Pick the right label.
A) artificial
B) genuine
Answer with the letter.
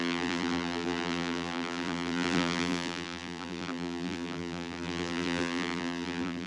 A